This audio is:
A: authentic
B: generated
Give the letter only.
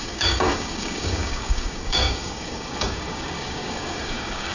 B